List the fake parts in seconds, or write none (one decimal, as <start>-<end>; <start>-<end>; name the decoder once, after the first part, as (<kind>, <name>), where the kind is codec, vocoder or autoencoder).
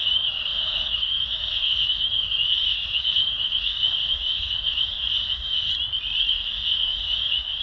0.0-5.7 (autoencoder, DAC-VAE); 6.3-7.6